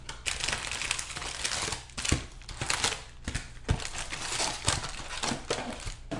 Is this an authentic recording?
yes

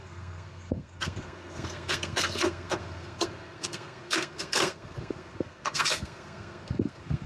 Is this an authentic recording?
no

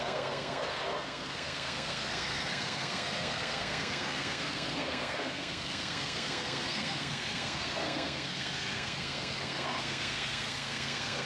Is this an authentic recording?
no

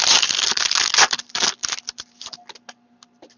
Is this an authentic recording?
yes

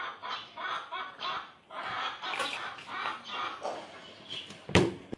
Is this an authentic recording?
yes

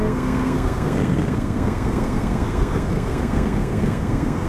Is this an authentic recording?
no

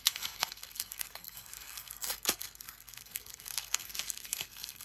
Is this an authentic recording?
no